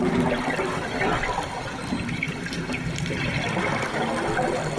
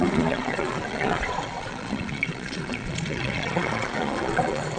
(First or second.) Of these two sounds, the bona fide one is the first